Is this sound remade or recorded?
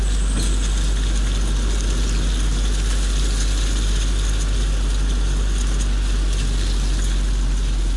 recorded